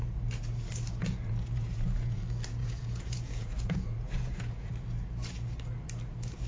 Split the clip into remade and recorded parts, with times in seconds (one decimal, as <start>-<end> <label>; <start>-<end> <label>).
0.0-1.0 recorded; 1.0-2.2 remade; 2.2-2.6 recorded; 2.6-4.7 remade; 4.7-6.5 recorded